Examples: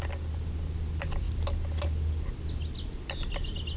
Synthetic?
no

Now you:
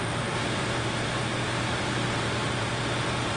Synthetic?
yes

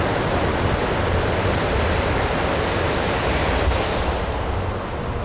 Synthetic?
no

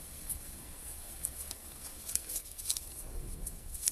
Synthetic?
yes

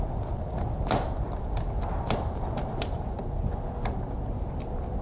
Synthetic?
no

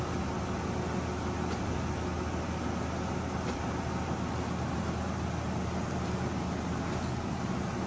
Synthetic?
no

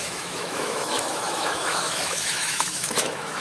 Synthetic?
yes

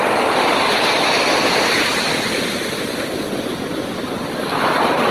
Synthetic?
no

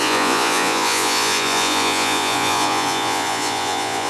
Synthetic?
yes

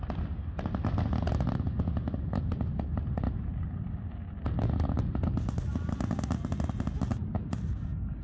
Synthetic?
no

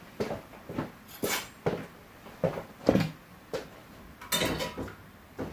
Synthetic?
no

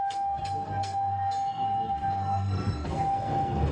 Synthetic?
yes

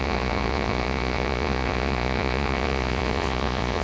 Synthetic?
yes